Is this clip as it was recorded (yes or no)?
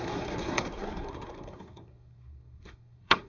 no